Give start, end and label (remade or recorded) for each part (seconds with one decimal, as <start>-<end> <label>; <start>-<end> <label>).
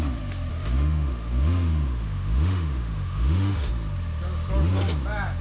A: 0.0-0.5 recorded; 0.5-3.7 remade; 3.7-5.4 recorded